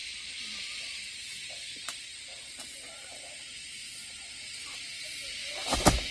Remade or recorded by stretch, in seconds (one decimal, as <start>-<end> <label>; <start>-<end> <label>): 0.0-1.2 recorded; 1.2-3.8 remade; 3.8-4.6 recorded; 4.6-5.4 remade; 5.4-6.1 recorded